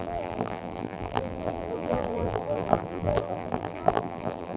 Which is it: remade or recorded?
remade